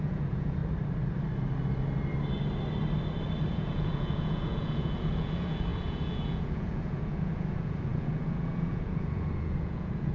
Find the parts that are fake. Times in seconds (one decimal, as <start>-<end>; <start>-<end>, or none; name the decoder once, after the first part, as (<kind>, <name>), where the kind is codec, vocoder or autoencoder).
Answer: 0.0-0.6 (vocoder, Vocos); 3.5-10.1